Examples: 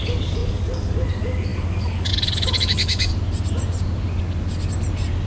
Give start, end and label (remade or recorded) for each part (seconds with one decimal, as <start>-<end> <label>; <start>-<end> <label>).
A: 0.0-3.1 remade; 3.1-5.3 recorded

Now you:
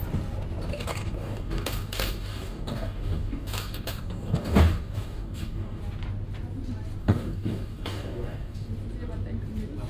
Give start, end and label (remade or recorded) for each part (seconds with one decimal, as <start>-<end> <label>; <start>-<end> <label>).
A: 0.0-0.7 recorded; 0.7-5.8 remade; 5.8-7.0 recorded; 7.0-8.7 remade; 8.7-9.9 recorded

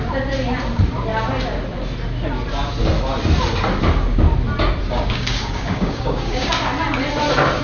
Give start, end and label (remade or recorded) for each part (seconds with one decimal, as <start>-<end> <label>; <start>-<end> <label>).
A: 0.0-4.9 recorded; 4.9-6.5 remade; 6.5-7.6 recorded

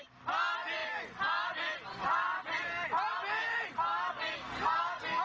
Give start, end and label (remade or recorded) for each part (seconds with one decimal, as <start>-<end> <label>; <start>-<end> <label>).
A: 0.0-5.2 recorded